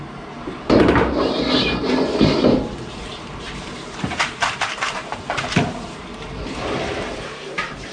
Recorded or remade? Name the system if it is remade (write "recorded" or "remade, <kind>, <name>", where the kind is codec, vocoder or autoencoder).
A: remade, vocoder, BigVGAN v2